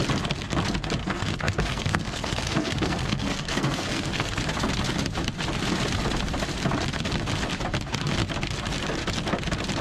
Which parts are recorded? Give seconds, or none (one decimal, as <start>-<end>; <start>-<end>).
0.0-1.0; 4.4-9.8